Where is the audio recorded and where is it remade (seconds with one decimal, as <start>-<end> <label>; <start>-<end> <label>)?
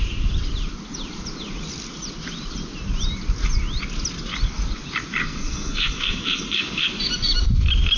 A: 0.0-5.2 recorded; 5.2-7.0 remade; 7.0-8.0 recorded